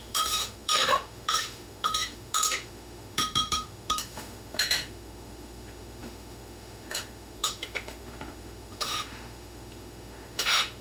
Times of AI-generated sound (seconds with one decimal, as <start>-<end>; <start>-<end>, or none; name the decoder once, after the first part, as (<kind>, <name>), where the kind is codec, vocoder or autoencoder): 0.0-10.8 (autoencoder, DAC-VAE)